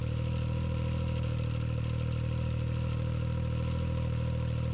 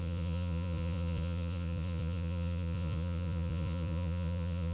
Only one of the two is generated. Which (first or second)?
second